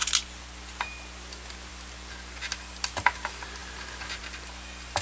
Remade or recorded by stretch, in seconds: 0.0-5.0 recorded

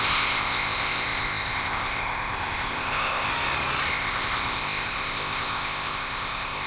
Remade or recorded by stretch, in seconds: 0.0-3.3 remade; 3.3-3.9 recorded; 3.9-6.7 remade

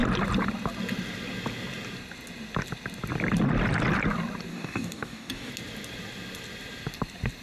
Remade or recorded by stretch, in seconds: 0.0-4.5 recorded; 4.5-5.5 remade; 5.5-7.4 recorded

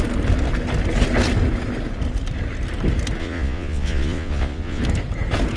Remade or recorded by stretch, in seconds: 0.0-3.2 recorded; 3.2-4.8 remade; 4.8-5.6 recorded

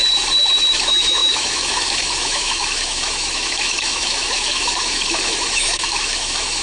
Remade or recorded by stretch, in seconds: 0.0-0.7 recorded; 0.7-6.6 remade